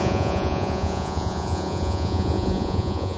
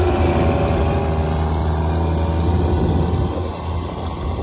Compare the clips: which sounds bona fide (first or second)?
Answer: second